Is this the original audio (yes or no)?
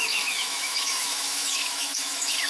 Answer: no